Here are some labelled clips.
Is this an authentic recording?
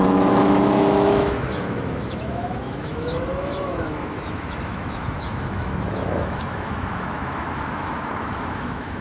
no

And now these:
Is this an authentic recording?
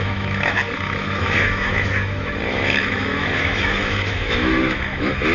no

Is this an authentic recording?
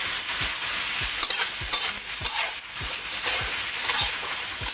yes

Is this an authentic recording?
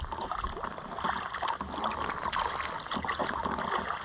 yes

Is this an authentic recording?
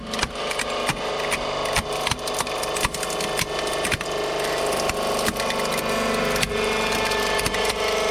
yes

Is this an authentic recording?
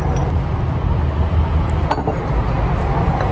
yes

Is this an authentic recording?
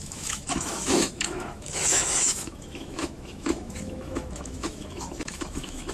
no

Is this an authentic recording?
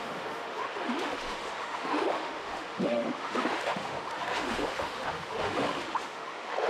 no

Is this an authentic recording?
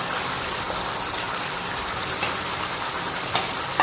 yes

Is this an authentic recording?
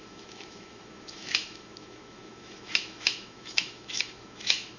no